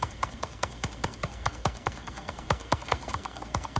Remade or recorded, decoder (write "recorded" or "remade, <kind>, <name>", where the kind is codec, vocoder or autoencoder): remade, codec, SNAC